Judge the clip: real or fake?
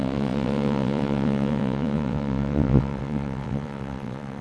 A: fake